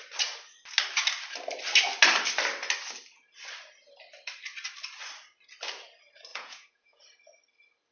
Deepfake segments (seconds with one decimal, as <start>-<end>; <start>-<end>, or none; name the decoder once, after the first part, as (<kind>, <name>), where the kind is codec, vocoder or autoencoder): 6.3-7.0 (vocoder, Vocos)